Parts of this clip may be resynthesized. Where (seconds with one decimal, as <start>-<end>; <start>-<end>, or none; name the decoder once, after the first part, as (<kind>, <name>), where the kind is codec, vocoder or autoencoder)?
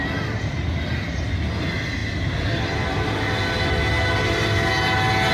none